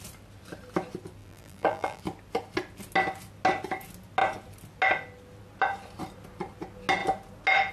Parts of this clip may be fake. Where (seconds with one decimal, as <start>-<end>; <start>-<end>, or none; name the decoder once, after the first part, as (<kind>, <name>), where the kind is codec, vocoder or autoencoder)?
1.2-2.0 (vocoder, BigVGAN v2)